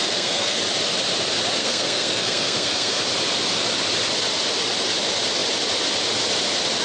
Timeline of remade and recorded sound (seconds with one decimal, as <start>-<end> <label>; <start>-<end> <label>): 0.0-0.6 remade; 0.6-1.6 recorded; 1.6-3.0 remade; 3.0-6.8 recorded